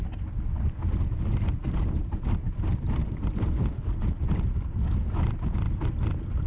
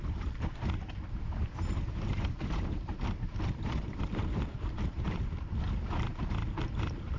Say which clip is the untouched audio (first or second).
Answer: first